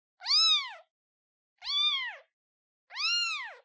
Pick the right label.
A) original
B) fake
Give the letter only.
A